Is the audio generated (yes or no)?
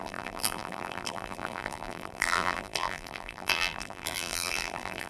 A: yes